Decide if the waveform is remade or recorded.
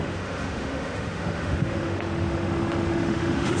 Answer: remade